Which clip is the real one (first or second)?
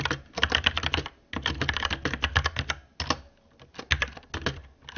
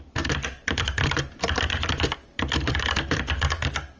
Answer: first